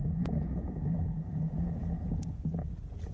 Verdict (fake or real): fake